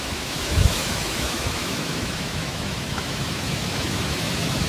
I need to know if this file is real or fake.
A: fake